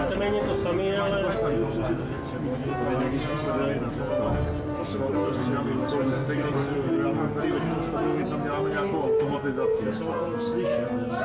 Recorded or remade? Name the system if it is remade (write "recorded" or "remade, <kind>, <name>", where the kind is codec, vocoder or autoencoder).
recorded